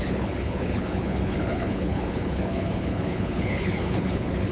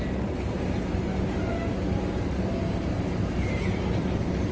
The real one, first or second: second